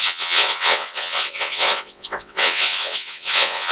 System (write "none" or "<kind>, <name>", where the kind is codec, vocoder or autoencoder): vocoder, WaveNeXt